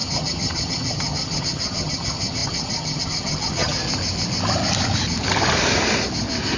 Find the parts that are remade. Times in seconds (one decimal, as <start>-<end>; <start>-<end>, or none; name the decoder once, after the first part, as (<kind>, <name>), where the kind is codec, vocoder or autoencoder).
0.0-3.8 (vocoder, HiFi-GAN)